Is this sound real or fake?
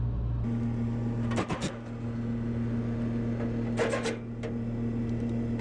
real